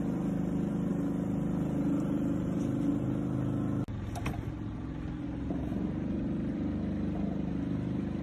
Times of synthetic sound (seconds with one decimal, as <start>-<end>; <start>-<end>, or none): none